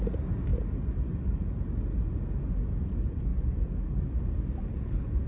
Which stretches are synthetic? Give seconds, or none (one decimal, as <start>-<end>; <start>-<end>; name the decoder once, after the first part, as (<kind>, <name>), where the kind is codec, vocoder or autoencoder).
none